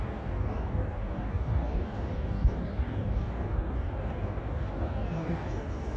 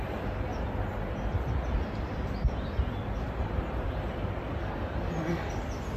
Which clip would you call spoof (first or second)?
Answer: first